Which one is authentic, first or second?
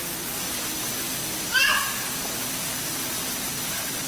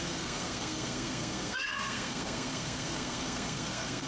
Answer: first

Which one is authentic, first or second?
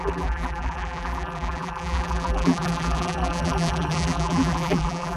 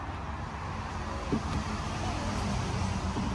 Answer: second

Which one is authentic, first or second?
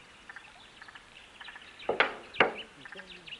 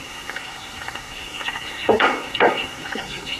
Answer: first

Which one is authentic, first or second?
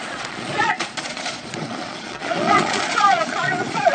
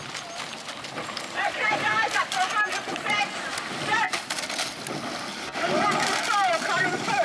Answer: second